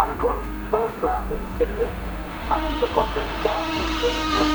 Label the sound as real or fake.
fake